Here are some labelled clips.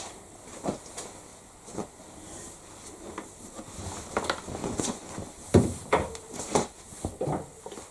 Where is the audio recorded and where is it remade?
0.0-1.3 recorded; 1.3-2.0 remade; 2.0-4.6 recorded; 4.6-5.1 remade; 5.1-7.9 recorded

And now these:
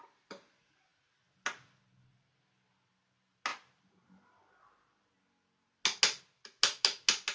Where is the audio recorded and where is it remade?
0.0-7.3 recorded

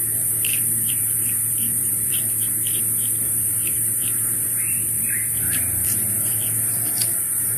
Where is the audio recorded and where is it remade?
0.0-2.8 remade; 2.8-3.5 recorded; 3.5-7.6 remade

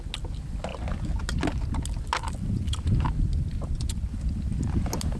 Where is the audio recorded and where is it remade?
0.0-5.2 recorded

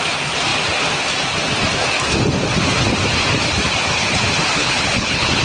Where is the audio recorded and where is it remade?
0.0-4.6 recorded; 4.6-5.4 remade

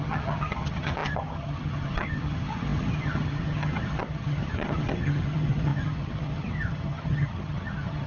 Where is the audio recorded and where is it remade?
0.0-8.1 remade